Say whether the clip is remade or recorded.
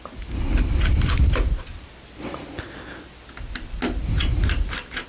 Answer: recorded